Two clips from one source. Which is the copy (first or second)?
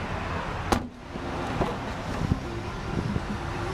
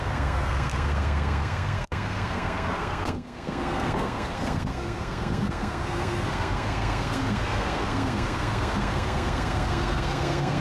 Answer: second